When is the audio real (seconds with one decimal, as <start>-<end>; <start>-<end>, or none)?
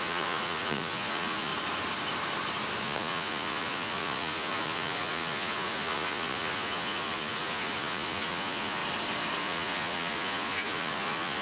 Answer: 1.5-2.8; 8.8-9.4